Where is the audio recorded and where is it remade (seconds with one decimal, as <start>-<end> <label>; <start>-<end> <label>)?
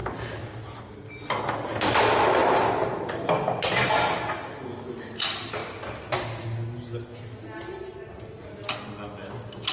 0.0-9.7 recorded